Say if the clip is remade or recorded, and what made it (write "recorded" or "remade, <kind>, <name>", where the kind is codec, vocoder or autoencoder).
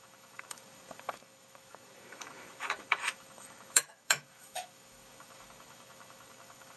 remade, autoencoder, DAC-VAE